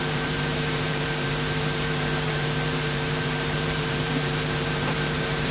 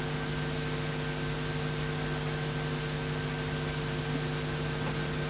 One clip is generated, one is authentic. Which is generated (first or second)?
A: first